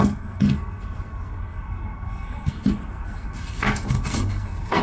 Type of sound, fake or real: fake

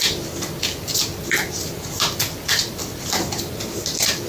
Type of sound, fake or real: real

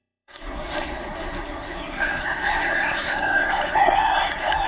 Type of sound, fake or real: fake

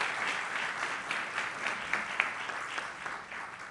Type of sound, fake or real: real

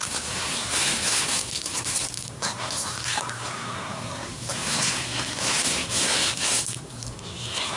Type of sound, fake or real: fake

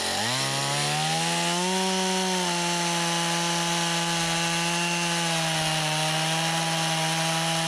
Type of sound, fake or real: real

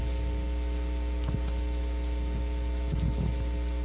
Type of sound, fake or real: real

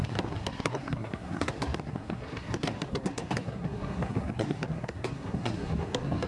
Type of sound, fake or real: fake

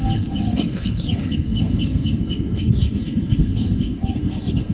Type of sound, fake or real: fake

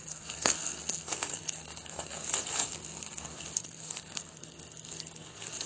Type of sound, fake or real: fake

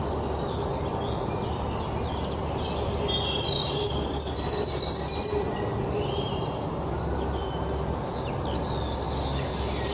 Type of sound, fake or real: real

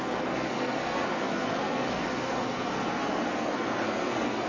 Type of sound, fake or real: fake